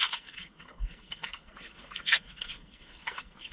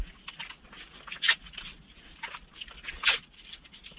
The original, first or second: second